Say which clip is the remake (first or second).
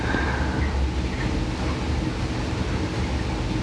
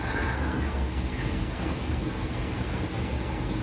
second